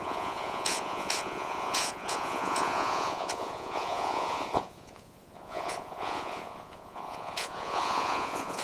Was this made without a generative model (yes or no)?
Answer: no